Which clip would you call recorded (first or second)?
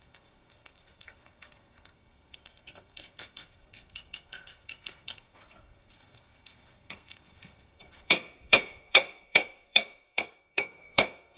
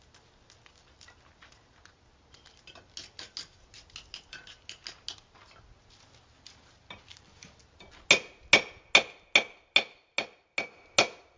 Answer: second